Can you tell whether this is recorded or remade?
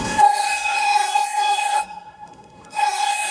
remade